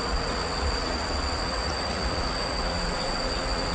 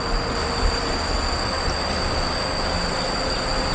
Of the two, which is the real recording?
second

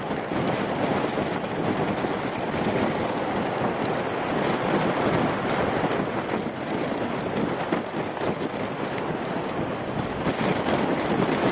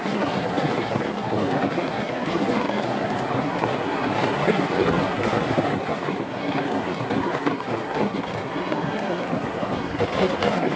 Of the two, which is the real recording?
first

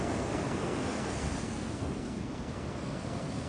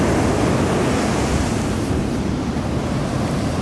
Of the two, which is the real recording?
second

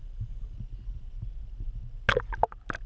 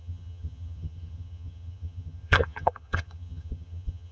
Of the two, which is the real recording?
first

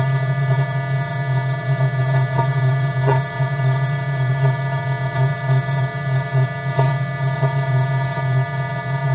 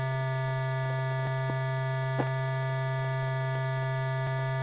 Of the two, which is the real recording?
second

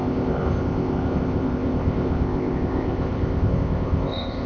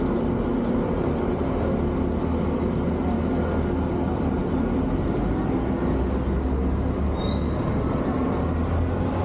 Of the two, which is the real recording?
second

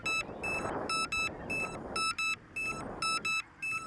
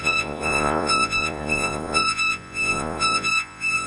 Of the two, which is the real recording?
first